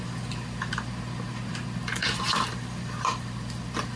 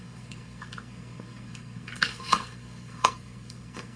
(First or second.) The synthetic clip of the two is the second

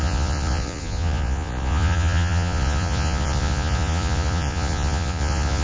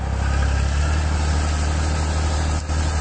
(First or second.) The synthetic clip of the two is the first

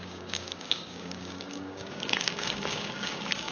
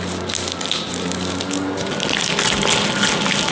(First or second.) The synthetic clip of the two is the first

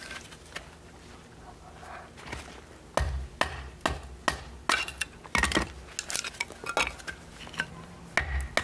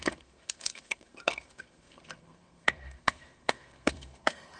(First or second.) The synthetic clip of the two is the second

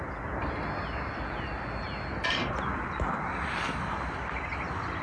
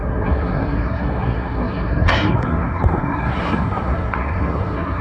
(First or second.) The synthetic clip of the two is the second